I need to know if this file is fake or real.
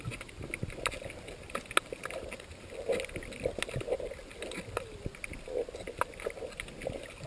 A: real